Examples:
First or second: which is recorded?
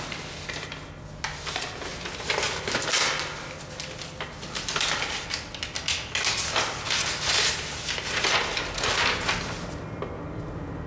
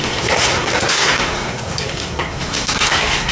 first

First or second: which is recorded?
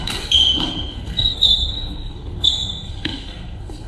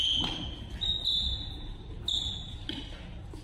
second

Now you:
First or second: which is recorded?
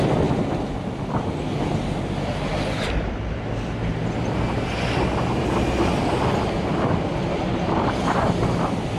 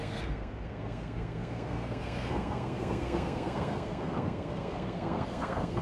first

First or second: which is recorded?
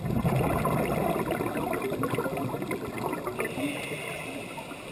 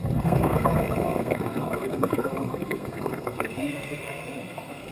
first